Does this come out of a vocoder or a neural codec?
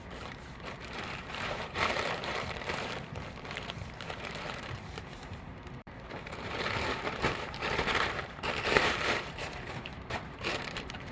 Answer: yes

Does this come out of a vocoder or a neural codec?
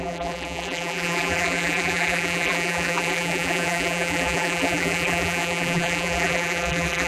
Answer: yes